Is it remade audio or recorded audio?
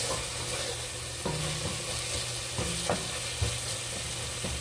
recorded